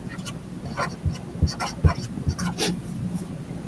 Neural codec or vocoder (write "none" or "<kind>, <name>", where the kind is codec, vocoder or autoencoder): none